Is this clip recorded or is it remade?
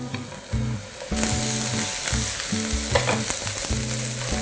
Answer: recorded